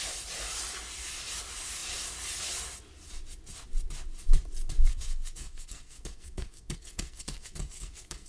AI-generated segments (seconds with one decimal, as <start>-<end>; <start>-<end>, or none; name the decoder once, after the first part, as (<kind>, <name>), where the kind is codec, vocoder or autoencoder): 4.9-8.3 (codec, SNAC)